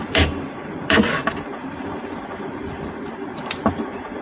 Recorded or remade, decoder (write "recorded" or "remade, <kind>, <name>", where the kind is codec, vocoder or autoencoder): remade, vocoder, BigVGAN v2